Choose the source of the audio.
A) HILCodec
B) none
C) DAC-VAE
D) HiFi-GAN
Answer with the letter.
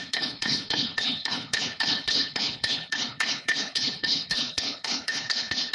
A